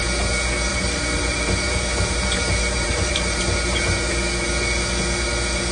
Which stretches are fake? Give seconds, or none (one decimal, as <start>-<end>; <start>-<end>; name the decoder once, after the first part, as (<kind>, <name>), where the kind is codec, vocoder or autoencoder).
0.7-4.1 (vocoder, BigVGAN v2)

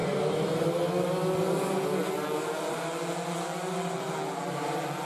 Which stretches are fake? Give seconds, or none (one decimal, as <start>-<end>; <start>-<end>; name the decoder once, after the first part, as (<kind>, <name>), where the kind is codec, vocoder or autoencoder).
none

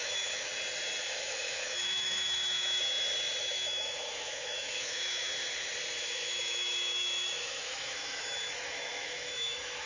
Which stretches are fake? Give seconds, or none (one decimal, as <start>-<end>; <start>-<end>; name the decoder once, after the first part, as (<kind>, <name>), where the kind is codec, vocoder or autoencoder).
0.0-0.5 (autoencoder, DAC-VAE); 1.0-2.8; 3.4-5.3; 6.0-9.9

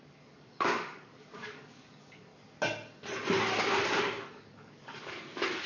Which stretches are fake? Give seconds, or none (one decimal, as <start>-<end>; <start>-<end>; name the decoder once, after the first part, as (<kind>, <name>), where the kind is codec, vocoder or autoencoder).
0.0-2.3 (codec, DAC); 4.0-5.7

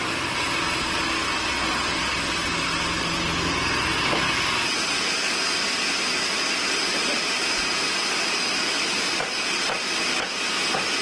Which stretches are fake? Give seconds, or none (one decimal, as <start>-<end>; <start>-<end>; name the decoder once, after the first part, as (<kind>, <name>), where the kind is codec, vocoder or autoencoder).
none

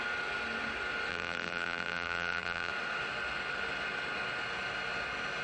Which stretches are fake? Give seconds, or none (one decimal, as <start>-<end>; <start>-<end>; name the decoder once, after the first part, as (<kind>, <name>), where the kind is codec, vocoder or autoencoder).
1.1-2.7 (vocoder, BigVGAN v2)

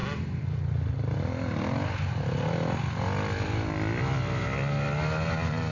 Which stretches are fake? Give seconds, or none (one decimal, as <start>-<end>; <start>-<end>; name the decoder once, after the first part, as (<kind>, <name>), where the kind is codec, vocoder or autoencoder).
none

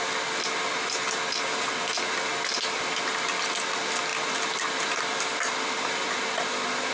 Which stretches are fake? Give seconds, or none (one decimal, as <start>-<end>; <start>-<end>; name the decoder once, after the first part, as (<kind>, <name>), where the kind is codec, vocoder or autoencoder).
none